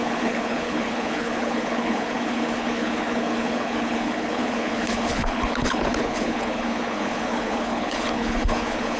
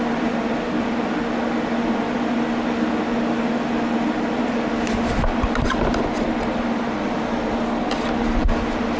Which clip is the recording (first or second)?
second